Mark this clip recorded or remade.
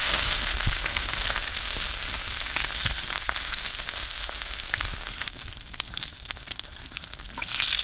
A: remade